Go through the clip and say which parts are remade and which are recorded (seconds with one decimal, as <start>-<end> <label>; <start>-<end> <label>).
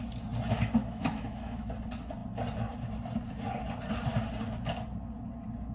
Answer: 0.0-0.8 recorded; 0.8-1.7 remade; 1.7-5.7 recorded